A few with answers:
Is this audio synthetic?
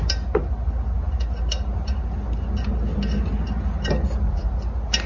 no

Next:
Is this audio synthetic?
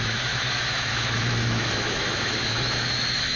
yes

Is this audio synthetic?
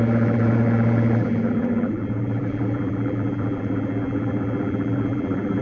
yes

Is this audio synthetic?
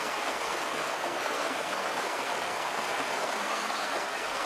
yes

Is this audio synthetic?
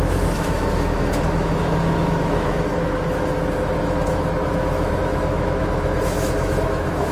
yes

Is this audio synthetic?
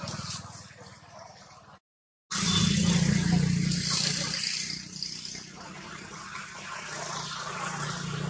no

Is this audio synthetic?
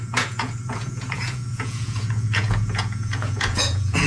yes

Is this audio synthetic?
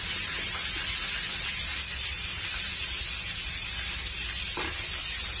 no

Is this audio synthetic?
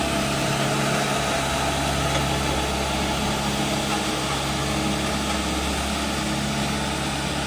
no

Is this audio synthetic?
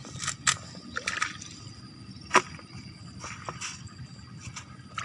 no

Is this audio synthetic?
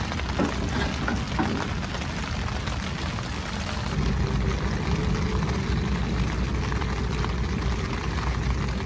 no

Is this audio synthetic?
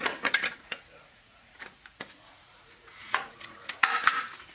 yes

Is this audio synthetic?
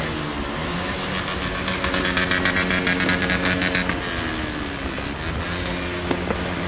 no